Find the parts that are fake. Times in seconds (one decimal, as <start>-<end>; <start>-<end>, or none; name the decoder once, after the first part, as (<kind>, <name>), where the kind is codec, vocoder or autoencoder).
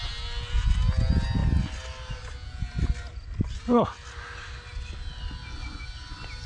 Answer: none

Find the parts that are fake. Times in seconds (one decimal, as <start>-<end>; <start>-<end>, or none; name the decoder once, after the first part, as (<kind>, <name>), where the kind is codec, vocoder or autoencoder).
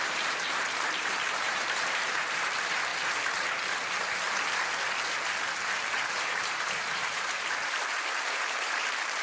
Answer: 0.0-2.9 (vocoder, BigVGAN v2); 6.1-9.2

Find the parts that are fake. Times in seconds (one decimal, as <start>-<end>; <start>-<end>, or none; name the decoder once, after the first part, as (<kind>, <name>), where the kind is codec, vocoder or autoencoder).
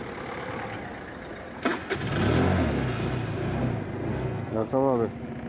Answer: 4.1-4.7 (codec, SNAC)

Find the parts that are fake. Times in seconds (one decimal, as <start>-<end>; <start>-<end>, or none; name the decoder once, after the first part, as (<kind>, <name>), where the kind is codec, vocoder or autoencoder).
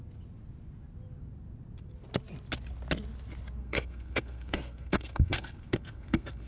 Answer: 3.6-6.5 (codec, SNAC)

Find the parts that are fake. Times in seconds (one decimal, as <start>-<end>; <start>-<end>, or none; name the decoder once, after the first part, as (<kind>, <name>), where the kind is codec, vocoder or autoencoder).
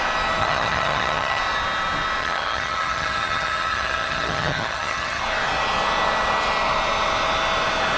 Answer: 0.4-1.4 (vocoder, HiFi-GAN); 2.2-5.2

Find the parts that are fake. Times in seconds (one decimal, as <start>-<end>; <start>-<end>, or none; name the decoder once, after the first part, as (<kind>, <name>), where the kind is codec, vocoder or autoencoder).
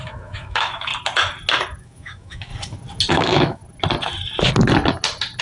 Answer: 0.0-0.9 (autoencoder, DAC-VAE); 1.8-2.5; 3.1-3.6